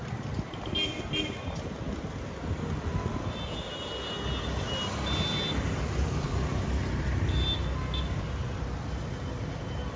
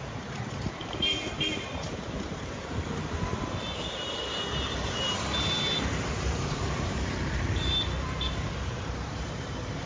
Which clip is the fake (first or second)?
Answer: second